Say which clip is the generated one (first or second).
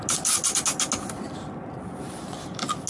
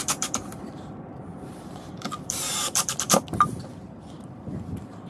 second